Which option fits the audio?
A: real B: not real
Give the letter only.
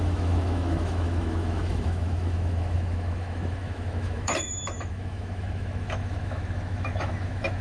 B